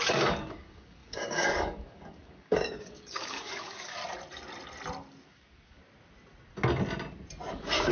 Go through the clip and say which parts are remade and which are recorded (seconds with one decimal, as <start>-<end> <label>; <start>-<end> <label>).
0.0-4.0 remade; 4.0-5.2 recorded; 5.2-5.8 remade; 5.8-7.5 recorded; 7.5-7.9 remade